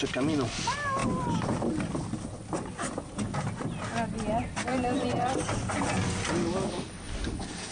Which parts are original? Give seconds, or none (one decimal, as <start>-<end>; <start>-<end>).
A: 0.0-6.4